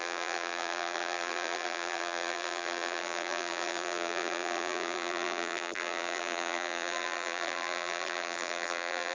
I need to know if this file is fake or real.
fake